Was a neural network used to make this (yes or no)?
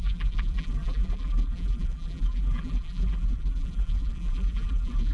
yes